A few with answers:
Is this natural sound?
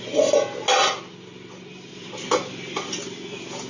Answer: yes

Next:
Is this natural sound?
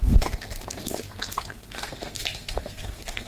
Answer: no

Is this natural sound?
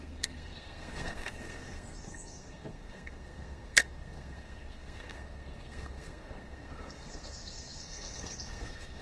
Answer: no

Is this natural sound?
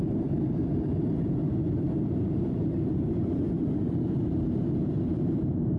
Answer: no